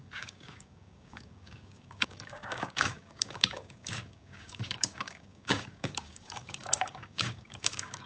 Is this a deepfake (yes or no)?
yes